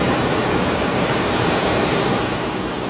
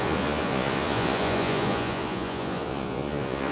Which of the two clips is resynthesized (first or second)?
second